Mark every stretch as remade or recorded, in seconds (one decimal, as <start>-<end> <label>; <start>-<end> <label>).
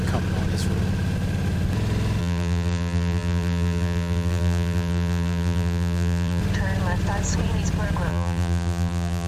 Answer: 0.0-2.2 recorded; 2.2-6.4 remade; 6.4-8.1 recorded; 8.1-9.3 remade